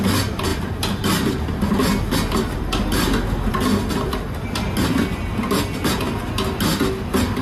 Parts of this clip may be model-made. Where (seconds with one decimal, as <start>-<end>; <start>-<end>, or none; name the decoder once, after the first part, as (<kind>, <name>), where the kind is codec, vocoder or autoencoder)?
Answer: none